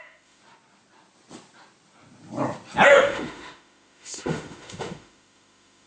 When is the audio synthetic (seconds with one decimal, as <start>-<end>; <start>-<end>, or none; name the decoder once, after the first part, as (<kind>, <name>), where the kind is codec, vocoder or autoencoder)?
0.0-0.4 (autoencoder, DAC-VAE); 2.9-5.9